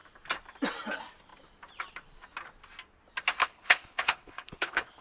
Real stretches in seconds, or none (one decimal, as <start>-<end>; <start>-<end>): 0.0-3.4